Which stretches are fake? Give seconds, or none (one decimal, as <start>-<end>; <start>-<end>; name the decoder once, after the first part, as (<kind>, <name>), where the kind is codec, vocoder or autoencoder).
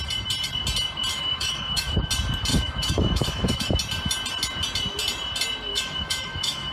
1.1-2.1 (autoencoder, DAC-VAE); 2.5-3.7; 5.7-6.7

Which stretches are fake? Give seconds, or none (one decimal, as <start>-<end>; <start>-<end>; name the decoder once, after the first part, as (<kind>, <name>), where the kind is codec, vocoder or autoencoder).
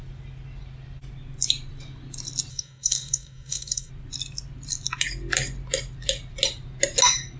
2.5-3.9 (codec, DAC)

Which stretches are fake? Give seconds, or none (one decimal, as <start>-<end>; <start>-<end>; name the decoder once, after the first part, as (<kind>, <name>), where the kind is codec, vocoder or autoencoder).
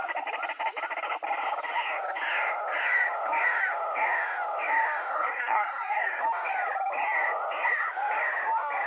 5.1-6.2 (codec, SNAC)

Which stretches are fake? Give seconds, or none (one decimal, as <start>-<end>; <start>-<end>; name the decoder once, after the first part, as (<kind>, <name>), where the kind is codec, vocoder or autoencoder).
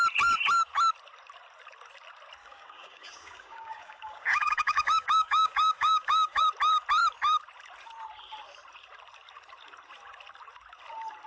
2.4-6.4 (codec, DAC)